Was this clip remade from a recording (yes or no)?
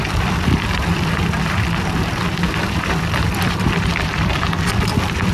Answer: yes